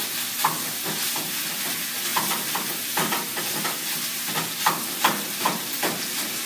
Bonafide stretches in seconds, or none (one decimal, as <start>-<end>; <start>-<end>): 0.0-6.5